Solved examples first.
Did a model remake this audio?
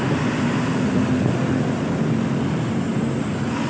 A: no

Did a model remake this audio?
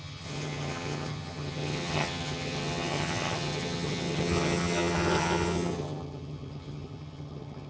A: yes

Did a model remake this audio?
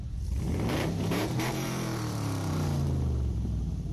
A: yes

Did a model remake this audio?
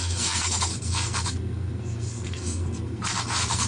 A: yes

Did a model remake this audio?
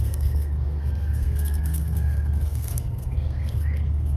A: yes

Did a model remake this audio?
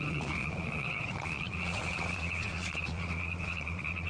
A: yes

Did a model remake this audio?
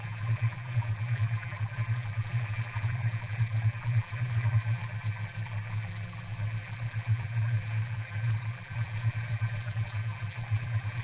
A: yes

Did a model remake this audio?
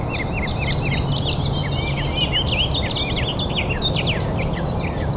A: no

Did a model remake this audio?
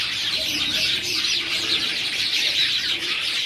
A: yes